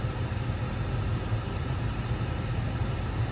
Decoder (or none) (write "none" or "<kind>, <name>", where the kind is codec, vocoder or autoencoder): none